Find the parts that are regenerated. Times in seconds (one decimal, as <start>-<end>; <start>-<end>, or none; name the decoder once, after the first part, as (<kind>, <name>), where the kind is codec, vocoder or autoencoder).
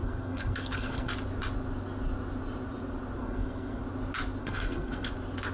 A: 0.0-1.1 (codec, SNAC); 3.2-3.8; 4.4-5.1